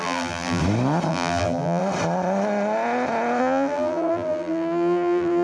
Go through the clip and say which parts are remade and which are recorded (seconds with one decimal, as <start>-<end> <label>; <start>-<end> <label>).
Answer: 0.0-0.6 remade; 0.6-1.1 recorded; 1.1-1.8 remade; 1.8-3.4 recorded; 3.4-5.4 remade